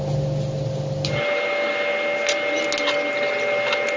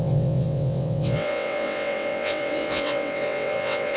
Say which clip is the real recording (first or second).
first